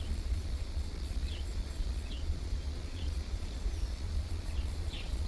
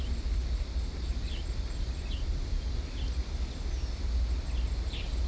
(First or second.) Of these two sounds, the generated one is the first